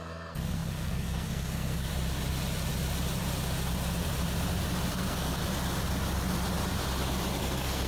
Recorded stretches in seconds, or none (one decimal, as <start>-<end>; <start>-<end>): 1.9-4.9; 5.4-7.4